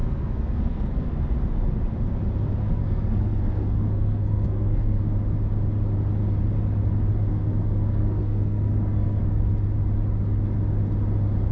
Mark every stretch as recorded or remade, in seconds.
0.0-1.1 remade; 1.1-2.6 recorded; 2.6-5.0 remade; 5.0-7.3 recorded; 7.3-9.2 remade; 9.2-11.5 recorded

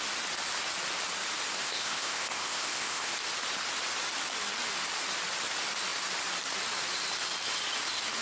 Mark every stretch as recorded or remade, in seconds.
0.0-1.6 recorded; 1.6-3.1 remade; 3.1-8.2 recorded

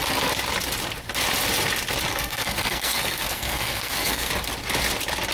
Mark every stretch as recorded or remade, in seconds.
0.0-2.1 recorded; 2.1-4.3 remade; 4.3-5.3 recorded

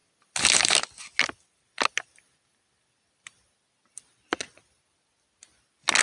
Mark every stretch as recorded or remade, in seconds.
0.0-6.0 recorded